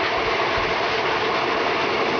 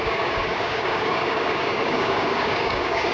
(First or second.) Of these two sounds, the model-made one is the second